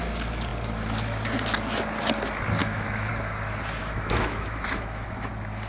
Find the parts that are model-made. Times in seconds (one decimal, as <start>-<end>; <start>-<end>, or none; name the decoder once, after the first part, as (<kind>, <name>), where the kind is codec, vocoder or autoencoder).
2.6-3.1 (autoencoder, DAC-VAE); 3.8-5.3